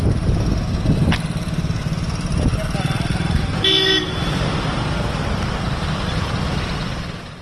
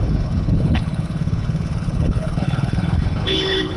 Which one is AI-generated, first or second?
second